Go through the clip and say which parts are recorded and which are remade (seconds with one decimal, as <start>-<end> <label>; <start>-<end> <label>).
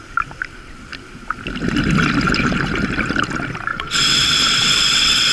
0.0-3.7 recorded; 3.7-5.3 remade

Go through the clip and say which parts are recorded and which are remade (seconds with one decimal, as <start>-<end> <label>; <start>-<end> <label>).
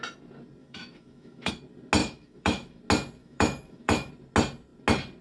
0.0-0.6 recorded; 0.6-1.5 remade; 1.5-2.0 recorded; 2.0-2.8 remade; 2.8-3.2 recorded; 3.2-4.1 remade; 4.1-5.2 recorded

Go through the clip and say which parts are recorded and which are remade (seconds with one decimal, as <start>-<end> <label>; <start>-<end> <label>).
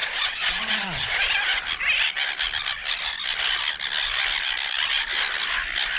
0.0-1.6 remade; 1.6-6.0 recorded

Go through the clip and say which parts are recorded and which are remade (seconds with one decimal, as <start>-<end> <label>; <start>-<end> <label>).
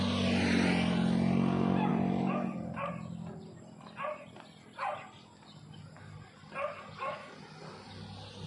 0.0-1.9 recorded; 1.9-2.9 remade; 2.9-8.5 recorded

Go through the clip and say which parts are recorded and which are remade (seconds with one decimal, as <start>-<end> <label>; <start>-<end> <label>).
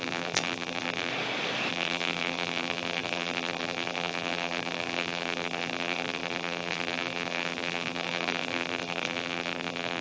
0.0-1.1 remade; 1.1-1.7 recorded; 1.7-10.0 remade